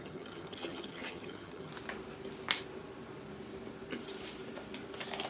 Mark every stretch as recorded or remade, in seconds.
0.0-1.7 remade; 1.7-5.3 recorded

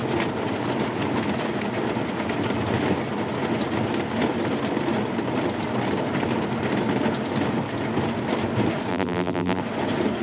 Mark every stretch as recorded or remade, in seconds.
0.0-8.9 recorded; 8.9-9.6 remade; 9.6-10.2 recorded

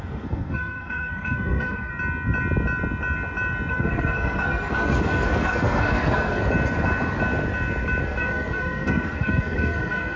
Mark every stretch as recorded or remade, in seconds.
0.0-1.9 remade; 1.9-3.7 recorded; 3.7-6.4 remade; 6.4-8.0 recorded; 8.0-10.2 remade

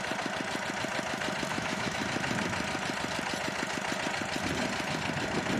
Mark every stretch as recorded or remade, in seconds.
0.0-1.5 recorded; 1.5-2.0 remade; 2.0-5.6 recorded